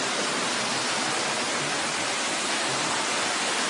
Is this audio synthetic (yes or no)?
no